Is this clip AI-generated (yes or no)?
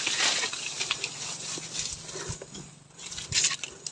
no